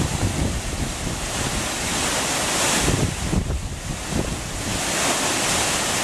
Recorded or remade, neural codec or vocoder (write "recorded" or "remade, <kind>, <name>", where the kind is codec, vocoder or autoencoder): recorded